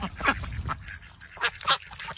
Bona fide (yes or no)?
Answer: yes